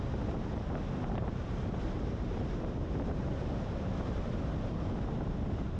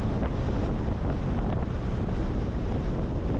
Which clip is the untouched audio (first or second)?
second